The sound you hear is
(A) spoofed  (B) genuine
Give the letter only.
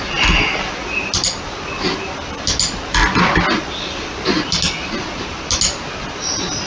B